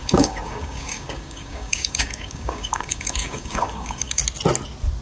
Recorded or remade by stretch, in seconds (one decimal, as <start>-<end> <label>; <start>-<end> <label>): 0.0-4.2 remade; 4.2-5.0 recorded